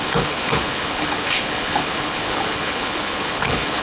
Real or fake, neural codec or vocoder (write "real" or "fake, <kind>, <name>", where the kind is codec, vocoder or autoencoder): fake, codec, HILCodec